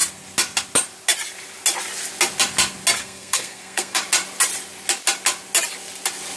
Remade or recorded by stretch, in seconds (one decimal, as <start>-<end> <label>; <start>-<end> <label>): 0.0-3.0 recorded; 3.0-4.0 remade; 4.0-6.4 recorded